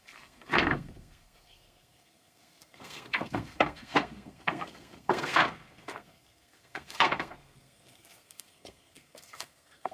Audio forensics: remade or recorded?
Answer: remade